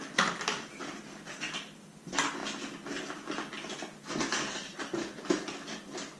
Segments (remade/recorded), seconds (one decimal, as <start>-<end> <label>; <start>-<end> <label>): 0.0-6.2 recorded

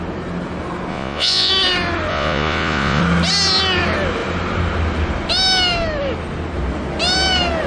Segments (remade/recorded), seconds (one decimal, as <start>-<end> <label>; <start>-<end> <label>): 0.0-0.9 recorded; 0.9-1.5 remade; 1.5-2.1 recorded; 2.1-3.0 remade; 3.0-7.7 recorded

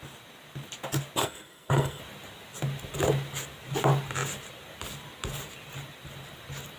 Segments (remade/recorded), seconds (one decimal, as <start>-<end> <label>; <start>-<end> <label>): 0.0-1.2 recorded; 1.2-2.0 remade; 2.0-6.8 recorded

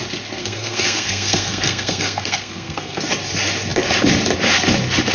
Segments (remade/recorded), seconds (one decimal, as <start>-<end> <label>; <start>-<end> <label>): 0.0-0.4 recorded; 0.4-3.0 remade; 3.0-5.1 recorded

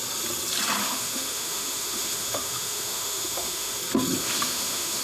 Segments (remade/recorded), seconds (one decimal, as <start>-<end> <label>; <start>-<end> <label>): 0.0-0.8 recorded; 0.8-3.8 remade; 3.8-4.2 recorded; 4.2-5.0 remade

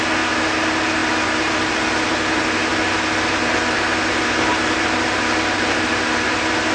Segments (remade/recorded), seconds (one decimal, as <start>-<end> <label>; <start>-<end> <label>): 0.0-6.7 recorded

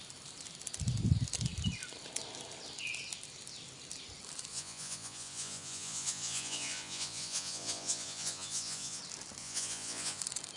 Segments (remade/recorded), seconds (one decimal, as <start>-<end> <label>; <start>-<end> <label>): 0.0-4.5 recorded; 4.5-9.0 remade; 9.0-9.4 recorded; 9.4-10.2 remade; 10.2-10.6 recorded